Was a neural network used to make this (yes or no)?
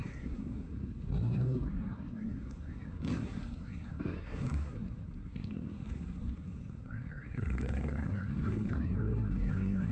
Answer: yes